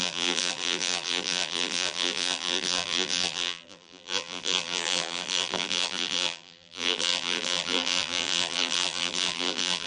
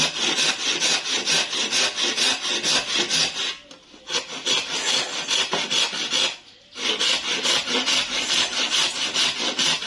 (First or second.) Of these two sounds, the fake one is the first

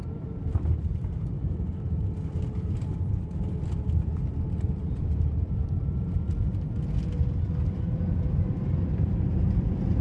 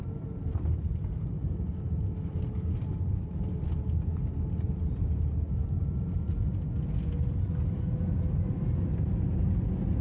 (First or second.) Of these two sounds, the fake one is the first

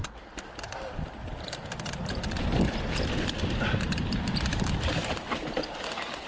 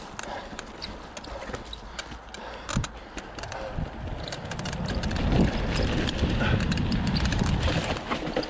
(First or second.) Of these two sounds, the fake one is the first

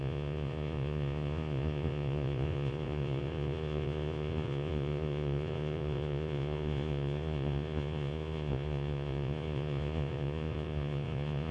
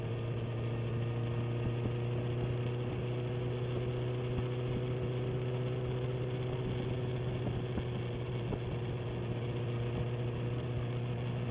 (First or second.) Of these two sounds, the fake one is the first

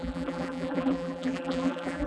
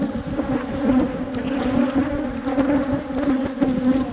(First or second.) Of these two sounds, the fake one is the first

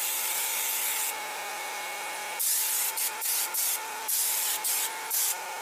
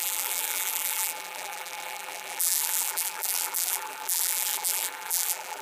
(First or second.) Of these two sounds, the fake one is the second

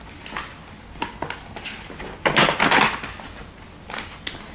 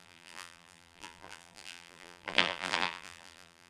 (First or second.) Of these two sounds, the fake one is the second